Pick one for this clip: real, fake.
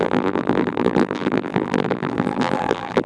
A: fake